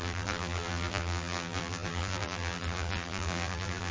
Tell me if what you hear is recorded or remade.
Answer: remade